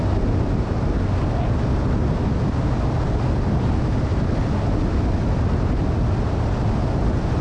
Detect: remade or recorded recorded